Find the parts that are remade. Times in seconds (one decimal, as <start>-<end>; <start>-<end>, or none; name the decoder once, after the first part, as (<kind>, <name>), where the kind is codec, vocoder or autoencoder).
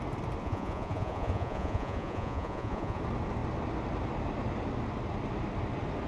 0.4-3.0 (vocoder, Vocos)